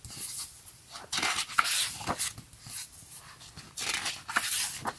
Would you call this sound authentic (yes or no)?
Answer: yes